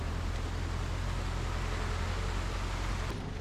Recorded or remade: recorded